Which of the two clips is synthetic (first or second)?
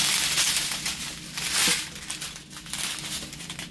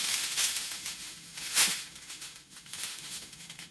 second